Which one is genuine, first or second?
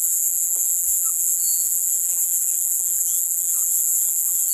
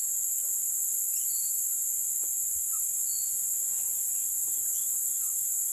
second